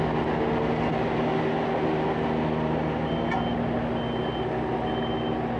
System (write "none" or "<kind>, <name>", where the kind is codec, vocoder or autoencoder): none